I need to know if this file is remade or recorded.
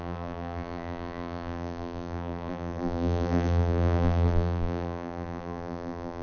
remade